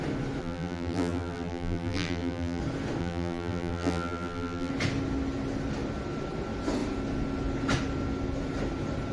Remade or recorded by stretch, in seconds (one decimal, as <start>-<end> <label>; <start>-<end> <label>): 0.0-0.4 recorded; 0.4-2.6 remade; 2.6-3.0 recorded; 3.0-4.7 remade; 4.7-9.1 recorded